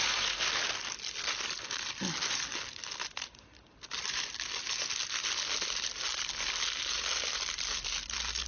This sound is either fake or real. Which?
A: real